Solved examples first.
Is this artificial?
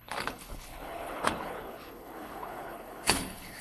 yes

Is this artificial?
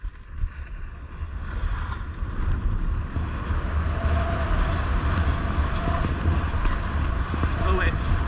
no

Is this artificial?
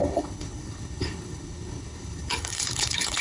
yes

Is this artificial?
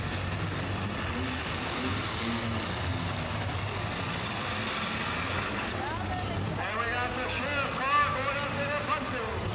no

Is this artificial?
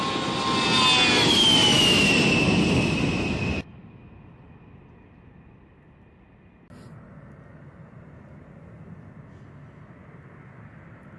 no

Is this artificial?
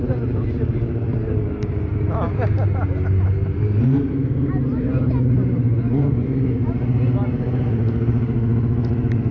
no